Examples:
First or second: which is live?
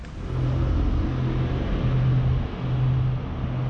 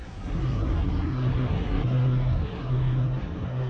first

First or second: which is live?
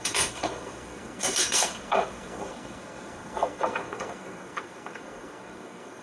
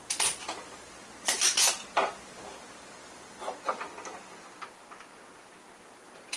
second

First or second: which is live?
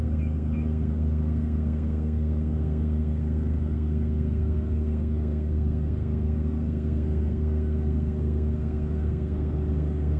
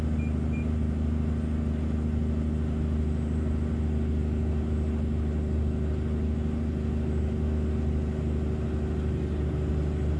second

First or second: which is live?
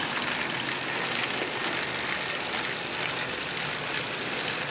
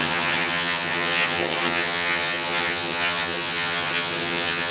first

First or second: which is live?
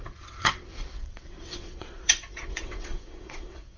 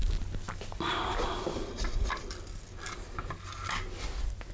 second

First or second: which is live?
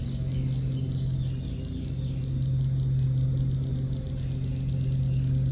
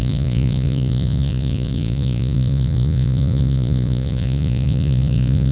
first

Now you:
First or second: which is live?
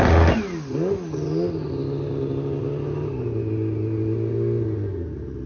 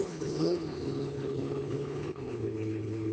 first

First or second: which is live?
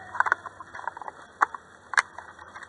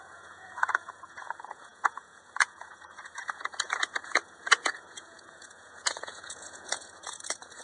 first